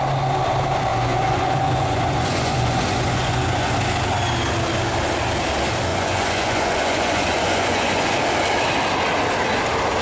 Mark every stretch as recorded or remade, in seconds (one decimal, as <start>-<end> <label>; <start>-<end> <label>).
0.0-0.9 recorded; 0.9-3.7 remade; 3.7-5.9 recorded; 5.9-8.2 remade; 8.2-10.0 recorded